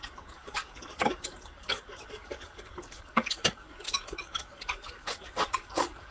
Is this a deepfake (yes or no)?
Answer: yes